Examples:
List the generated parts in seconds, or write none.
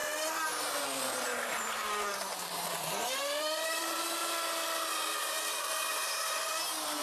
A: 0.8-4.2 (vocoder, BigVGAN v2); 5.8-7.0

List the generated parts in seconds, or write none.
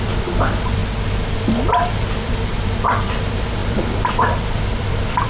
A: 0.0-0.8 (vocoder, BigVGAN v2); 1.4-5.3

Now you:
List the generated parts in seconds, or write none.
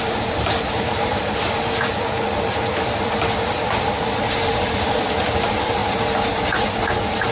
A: 0.0-7.3 (vocoder, BigVGAN v2)